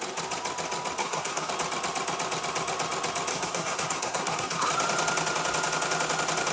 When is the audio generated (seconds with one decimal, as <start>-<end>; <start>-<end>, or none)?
1.0-1.5; 3.3-4.7